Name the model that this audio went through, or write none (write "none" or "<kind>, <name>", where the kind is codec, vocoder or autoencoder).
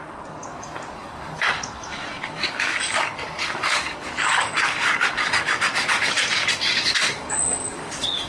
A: codec, DAC